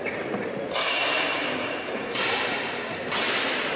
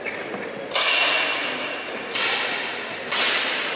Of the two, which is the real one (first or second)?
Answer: second